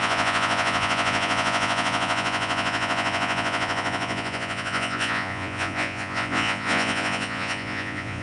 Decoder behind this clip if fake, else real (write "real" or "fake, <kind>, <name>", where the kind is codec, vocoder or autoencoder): fake, vocoder, Vocos